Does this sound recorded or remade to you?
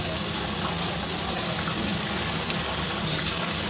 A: recorded